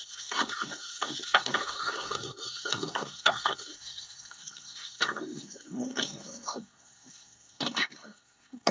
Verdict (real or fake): fake